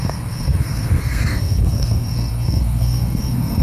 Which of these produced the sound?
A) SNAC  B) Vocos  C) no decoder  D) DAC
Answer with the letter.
A